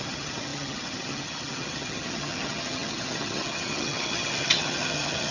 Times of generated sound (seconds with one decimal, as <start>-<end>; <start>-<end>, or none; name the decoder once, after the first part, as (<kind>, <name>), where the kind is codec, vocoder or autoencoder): 0.0-5.3 (vocoder, HiFi-GAN)